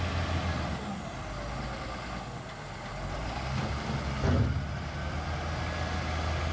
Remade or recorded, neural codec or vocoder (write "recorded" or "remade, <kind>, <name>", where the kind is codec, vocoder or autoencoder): recorded